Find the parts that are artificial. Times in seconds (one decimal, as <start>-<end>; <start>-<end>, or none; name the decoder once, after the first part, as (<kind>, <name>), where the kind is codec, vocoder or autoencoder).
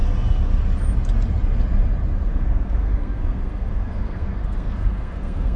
2.3-5.6 (codec, SNAC)